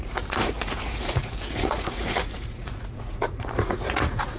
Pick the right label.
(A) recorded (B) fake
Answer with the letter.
B